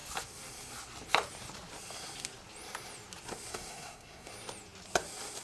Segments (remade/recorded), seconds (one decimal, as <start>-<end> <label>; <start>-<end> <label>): 0.0-3.5 recorded; 3.5-4.3 remade; 4.3-5.4 recorded